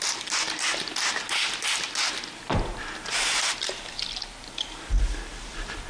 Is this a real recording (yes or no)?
yes